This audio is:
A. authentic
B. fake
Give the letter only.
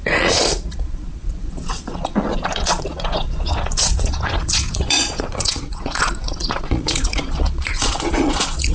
B